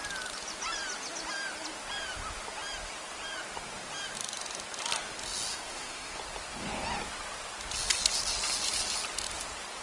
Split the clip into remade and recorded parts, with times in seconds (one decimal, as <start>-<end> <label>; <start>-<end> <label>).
0.0-5.5 recorded; 5.5-6.2 remade; 6.2-9.8 recorded